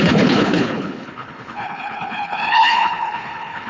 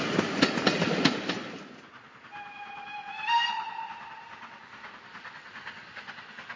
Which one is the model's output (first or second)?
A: first